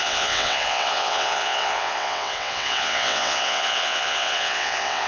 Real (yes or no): no